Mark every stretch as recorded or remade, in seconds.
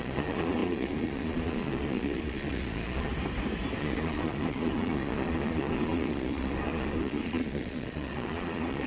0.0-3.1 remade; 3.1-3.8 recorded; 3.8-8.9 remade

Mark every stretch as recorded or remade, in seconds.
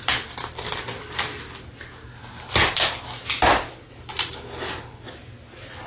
0.0-5.9 recorded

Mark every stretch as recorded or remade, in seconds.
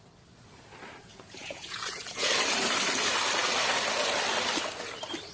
0.0-1.0 recorded; 1.0-2.3 remade; 2.3-5.3 recorded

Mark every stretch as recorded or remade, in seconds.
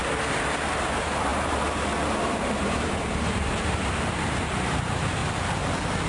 0.0-0.6 recorded; 0.6-5.2 remade; 5.2-6.1 recorded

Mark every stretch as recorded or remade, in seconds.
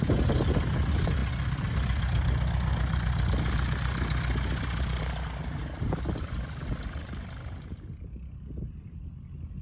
0.0-9.6 recorded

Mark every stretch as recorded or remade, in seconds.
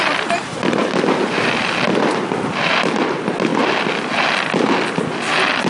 0.0-5.7 recorded